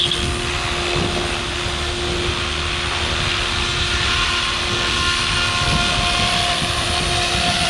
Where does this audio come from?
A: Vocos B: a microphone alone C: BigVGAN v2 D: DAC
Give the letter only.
B